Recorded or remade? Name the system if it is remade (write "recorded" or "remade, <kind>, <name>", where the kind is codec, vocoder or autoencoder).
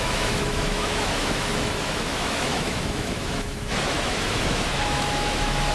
remade, autoencoder, DAC-VAE